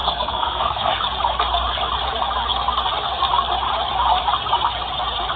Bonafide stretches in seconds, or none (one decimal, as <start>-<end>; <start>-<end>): 1.0-5.4